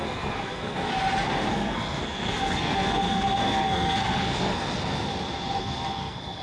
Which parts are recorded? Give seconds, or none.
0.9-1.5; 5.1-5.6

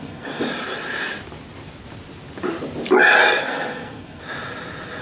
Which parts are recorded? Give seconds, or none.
0.4-3.4; 4.2-5.0